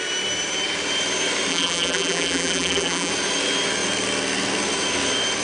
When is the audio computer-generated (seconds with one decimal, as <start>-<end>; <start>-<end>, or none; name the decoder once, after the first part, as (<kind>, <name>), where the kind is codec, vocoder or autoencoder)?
1.5-3.1 (vocoder, BigVGAN v2)